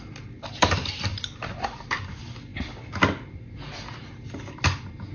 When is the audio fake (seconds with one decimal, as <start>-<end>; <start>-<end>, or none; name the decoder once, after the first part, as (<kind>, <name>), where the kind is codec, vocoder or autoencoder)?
1.1-2.0 (vocoder, BigVGAN v2)